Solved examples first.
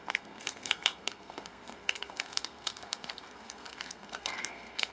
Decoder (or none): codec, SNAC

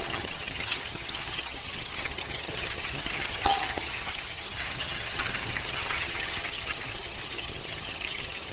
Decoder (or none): vocoder, HiFi-GAN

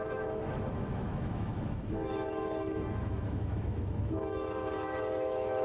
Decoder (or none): autoencoder, DAC-VAE